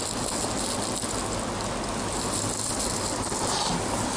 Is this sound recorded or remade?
recorded